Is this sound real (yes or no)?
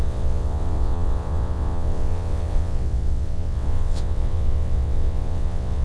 no